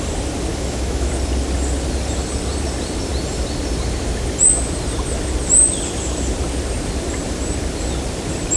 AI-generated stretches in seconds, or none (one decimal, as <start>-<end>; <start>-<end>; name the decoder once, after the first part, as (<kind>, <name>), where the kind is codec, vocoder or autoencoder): 0.5-1.1 (autoencoder, DAC-VAE)